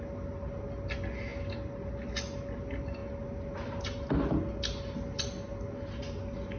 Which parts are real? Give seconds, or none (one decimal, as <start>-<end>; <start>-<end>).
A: 0.0-6.6